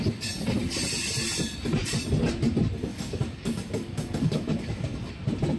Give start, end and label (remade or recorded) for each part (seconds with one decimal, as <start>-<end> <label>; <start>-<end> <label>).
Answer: 0.0-2.9 recorded; 2.9-5.1 remade; 5.1-5.6 recorded